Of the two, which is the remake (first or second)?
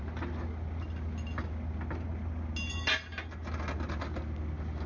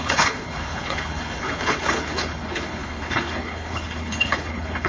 second